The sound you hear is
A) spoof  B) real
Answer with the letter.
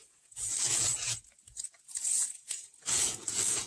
A